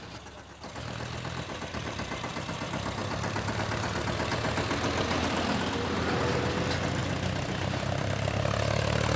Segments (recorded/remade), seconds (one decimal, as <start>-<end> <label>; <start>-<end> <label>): 0.0-3.0 recorded; 3.0-3.5 remade; 3.5-7.0 recorded; 7.0-9.2 remade